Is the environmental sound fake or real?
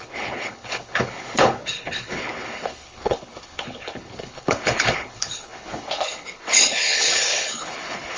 fake